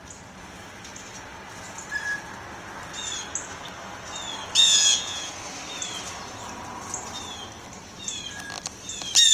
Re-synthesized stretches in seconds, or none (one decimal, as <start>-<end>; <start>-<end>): 4.6-5.3